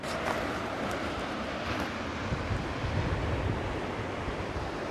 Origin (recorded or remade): recorded